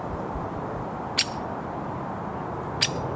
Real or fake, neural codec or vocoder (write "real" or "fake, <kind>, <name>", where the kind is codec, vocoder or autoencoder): real